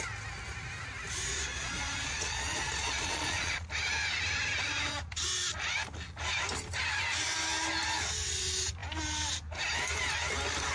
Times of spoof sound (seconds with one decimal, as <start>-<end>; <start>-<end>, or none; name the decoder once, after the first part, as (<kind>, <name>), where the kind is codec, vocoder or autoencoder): 1.3-3.7 (vocoder, Vocos)